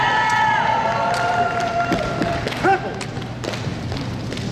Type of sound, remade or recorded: remade